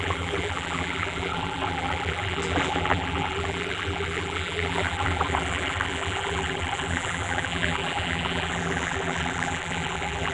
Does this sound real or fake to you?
fake